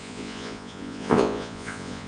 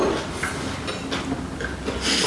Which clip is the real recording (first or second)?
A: second